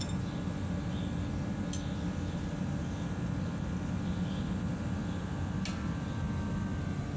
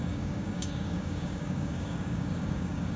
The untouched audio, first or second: first